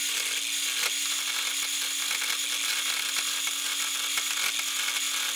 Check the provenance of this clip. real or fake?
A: real